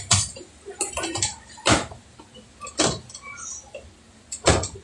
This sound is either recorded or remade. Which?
recorded